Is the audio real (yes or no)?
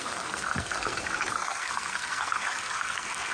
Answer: no